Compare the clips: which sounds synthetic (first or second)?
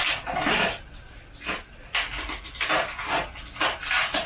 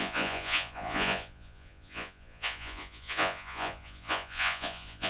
second